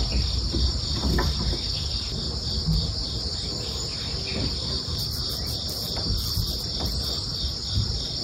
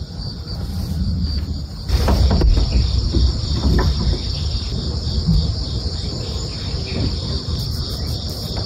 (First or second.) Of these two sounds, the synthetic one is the second